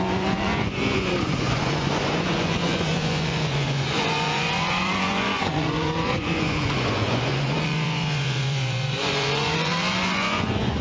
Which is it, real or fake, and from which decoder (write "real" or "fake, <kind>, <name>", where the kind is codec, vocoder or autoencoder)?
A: fake, vocoder, Vocos